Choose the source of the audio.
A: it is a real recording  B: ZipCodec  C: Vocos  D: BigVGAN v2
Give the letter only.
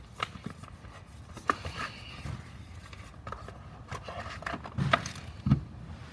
A